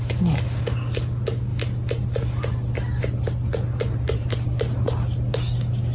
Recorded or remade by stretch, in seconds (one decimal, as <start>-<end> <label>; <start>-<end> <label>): 0.0-5.9 recorded